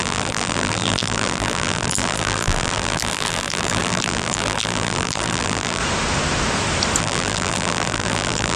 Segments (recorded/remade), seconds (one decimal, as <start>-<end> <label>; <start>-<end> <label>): 0.0-5.8 remade; 5.8-7.0 recorded; 7.0-8.6 remade